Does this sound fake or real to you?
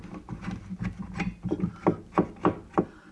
real